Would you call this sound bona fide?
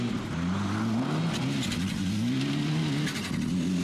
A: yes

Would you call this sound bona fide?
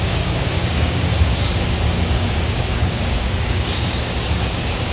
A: no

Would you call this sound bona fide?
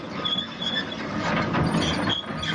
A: yes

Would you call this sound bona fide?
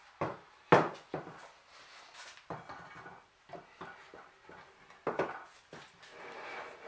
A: yes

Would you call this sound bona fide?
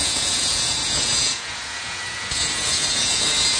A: no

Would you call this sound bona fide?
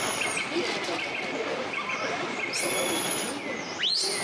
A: yes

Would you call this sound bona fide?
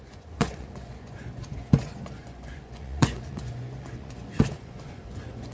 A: no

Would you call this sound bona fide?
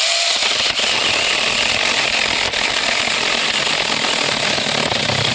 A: yes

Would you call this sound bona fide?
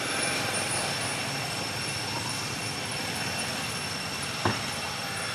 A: yes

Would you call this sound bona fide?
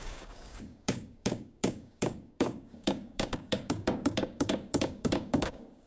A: no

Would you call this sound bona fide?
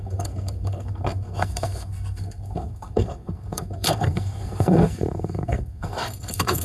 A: no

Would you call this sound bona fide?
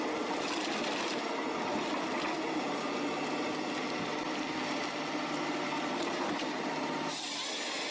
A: yes